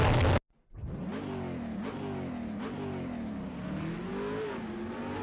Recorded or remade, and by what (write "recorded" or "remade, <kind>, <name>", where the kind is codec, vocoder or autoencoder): recorded